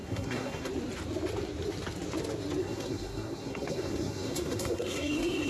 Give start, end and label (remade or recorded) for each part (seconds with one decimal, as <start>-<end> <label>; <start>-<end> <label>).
0.0-0.7 remade; 0.7-2.6 recorded; 2.6-5.5 remade